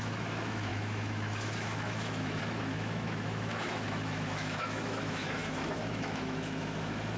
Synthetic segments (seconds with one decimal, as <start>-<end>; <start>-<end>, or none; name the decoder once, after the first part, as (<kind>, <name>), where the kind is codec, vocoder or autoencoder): 0.0-7.2 (autoencoder, DAC-VAE)